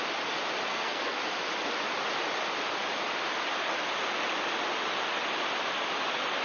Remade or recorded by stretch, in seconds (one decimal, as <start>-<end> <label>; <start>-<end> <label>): 0.0-0.7 recorded; 0.7-1.2 remade; 1.2-6.4 recorded

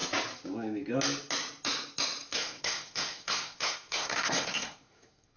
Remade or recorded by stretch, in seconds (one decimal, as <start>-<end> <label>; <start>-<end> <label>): 0.0-2.3 recorded; 2.3-5.4 remade

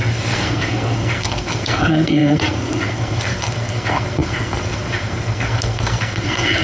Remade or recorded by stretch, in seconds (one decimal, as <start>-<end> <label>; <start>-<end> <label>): 0.0-6.6 remade

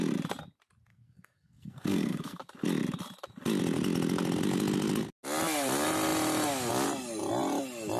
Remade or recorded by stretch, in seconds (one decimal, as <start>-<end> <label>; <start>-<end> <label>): 0.0-0.9 recorded; 0.9-2.4 remade; 2.4-8.0 recorded